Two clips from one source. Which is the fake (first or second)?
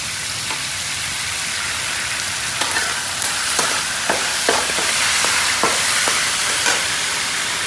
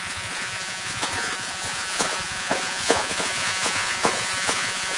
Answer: second